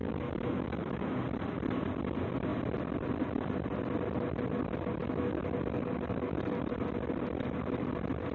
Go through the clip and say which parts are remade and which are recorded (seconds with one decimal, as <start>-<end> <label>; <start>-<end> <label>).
0.0-1.2 remade; 1.2-5.0 recorded; 5.0-6.7 remade; 6.7-8.3 recorded

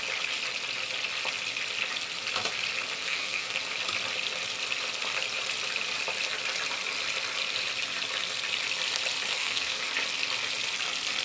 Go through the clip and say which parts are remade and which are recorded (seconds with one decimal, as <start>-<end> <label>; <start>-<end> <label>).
0.0-3.0 recorded; 3.0-3.6 remade; 3.6-9.3 recorded; 9.3-9.9 remade; 9.9-11.2 recorded

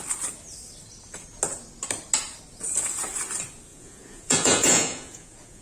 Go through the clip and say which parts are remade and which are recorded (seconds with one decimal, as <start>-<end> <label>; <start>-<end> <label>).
0.0-3.7 recorded; 3.7-5.6 remade

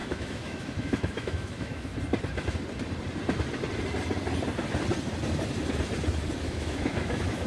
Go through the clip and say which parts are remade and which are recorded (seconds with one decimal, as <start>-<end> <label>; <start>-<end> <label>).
0.0-1.9 remade; 1.9-6.4 recorded; 6.4-7.5 remade

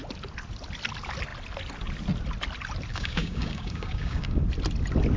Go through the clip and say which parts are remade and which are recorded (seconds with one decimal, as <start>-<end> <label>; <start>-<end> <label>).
0.0-2.9 recorded; 2.9-4.4 remade; 4.4-5.2 recorded

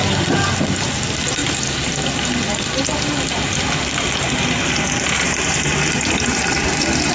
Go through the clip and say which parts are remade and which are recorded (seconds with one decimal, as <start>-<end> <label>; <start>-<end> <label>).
0.0-7.1 recorded